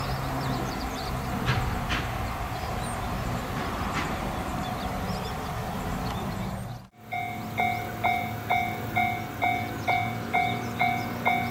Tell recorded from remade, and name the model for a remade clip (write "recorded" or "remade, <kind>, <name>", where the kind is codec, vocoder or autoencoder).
recorded